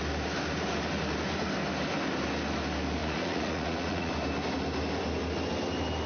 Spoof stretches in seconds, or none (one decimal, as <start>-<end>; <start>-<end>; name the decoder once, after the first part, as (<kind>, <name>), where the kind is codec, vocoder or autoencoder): 3.0-4.1 (vocoder, Vocos)

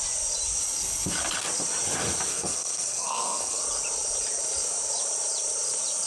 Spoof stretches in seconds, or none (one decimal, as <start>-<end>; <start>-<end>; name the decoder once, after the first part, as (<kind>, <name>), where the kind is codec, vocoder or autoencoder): 2.3-3.6 (codec, SNAC)